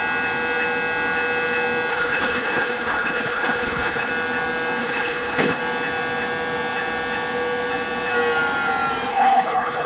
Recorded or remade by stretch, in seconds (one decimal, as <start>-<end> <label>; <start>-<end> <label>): 0.0-1.9 recorded; 1.9-4.1 remade; 4.1-4.8 recorded; 4.8-5.6 remade; 5.6-9.1 recorded; 9.1-9.9 remade